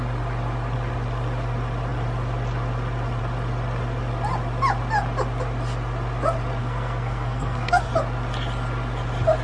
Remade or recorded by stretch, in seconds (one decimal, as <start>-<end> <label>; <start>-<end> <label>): 0.0-6.6 recorded; 6.6-7.9 remade; 7.9-9.4 recorded